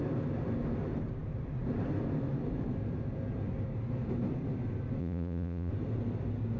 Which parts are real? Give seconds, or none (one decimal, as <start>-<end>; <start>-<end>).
0.0-5.0; 5.7-6.6